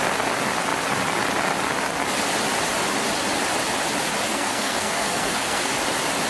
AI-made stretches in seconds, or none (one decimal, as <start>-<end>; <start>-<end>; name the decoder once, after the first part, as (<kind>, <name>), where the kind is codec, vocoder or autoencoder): 4.3-5.7 (codec, SNAC)